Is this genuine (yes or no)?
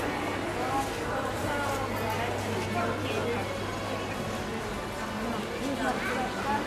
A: yes